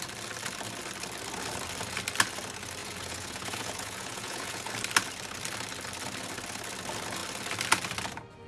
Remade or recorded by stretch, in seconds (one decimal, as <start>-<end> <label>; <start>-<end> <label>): 0.0-2.8 recorded; 2.8-4.7 remade; 4.7-8.5 recorded